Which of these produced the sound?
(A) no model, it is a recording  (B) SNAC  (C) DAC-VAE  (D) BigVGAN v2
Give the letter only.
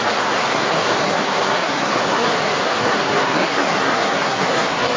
B